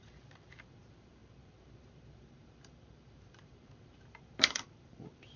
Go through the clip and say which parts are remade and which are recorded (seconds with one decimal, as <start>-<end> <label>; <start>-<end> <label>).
0.0-5.4 remade